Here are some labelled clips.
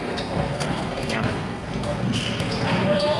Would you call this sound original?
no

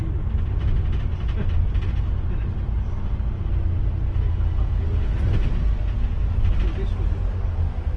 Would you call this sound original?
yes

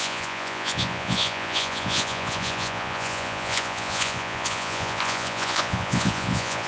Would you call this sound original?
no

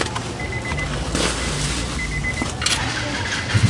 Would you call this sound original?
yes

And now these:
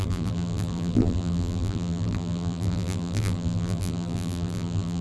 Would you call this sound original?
no